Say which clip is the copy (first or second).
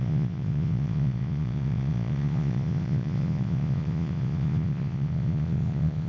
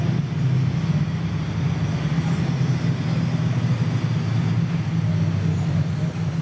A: first